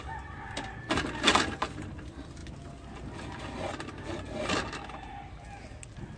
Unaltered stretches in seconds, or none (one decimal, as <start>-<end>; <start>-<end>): 0.0-6.2